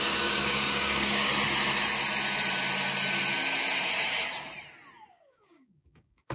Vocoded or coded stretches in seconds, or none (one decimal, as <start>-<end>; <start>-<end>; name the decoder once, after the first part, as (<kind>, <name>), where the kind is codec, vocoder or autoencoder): 0.0-1.3 (codec, DAC); 5.1-6.3